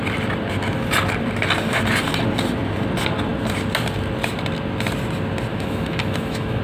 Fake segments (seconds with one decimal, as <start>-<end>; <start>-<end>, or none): 5.5-6.6